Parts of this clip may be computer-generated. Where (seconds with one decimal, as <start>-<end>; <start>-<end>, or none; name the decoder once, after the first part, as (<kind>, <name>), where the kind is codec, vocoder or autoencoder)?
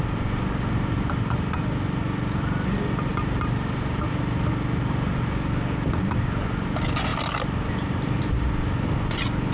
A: 3.1-4.2 (vocoder, BigVGAN v2)